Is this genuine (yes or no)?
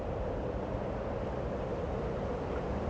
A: yes